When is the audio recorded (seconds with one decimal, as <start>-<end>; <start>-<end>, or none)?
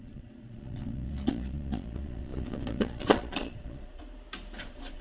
4.0-4.6